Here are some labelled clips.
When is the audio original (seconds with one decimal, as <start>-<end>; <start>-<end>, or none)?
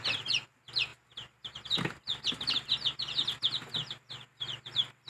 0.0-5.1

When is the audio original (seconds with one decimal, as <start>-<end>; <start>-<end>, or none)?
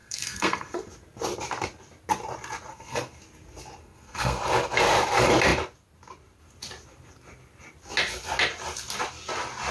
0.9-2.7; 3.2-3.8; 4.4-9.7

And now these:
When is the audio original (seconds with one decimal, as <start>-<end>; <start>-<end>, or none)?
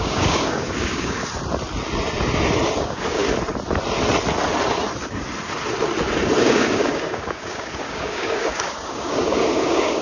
1.2-2.8; 3.2-6.4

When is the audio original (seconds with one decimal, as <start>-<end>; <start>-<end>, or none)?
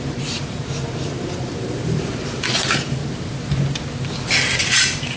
3.0-4.6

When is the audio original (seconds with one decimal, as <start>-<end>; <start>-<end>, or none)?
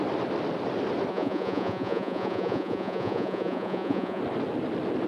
0.0-1.1; 4.2-5.1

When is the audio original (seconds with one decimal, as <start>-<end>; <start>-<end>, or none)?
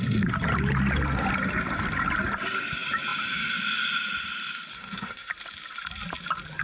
0.0-4.7; 5.3-6.6